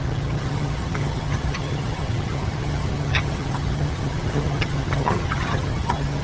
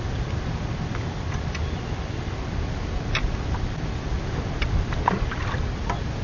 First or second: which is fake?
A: first